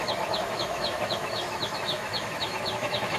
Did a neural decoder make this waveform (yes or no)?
yes